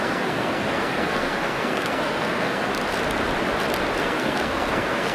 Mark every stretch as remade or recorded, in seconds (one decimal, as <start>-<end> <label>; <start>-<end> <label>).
0.0-2.7 remade; 2.7-4.0 recorded; 4.0-5.1 remade